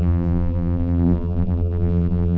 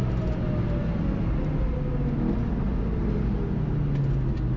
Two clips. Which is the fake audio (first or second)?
first